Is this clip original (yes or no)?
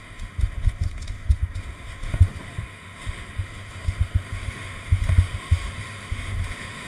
no